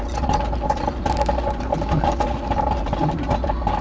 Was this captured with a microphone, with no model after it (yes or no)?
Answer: yes